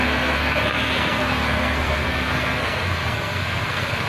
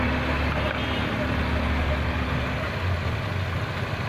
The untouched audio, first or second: second